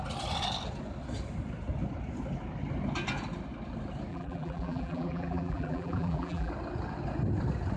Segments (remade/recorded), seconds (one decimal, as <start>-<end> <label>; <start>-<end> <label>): 0.0-4.1 recorded; 4.1-6.5 remade; 6.5-7.8 recorded

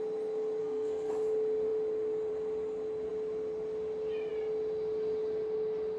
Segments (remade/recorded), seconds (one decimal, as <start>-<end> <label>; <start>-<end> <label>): 0.0-0.6 recorded; 0.6-1.1 remade; 1.1-6.0 recorded

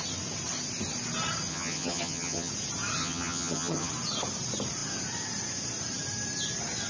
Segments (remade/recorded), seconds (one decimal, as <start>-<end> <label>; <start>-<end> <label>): 0.0-1.5 recorded; 1.5-2.5 remade; 2.5-3.0 recorded; 3.0-3.9 remade; 3.9-6.9 recorded

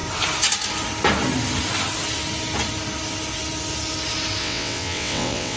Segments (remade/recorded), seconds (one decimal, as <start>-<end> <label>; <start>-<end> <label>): 0.0-4.4 recorded; 4.4-5.6 remade

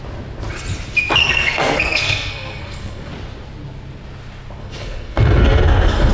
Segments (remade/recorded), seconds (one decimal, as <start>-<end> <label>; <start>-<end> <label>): 0.0-1.2 recorded; 1.2-3.1 remade; 3.1-4.6 recorded; 4.6-6.1 remade

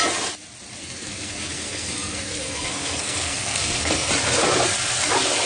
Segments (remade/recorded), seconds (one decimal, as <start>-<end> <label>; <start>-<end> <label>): 0.0-0.8 recorded; 0.8-4.1 remade; 4.1-5.5 recorded

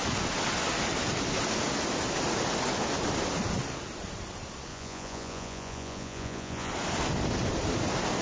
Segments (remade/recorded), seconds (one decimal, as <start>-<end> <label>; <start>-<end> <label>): 0.0-4.7 recorded; 4.7-6.7 remade; 6.7-8.2 recorded